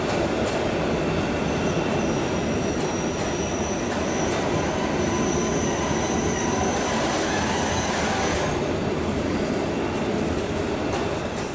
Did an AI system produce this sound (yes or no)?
no